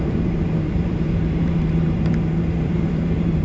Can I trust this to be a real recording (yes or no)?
no